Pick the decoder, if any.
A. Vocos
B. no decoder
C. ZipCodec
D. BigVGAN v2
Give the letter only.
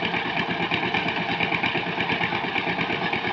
B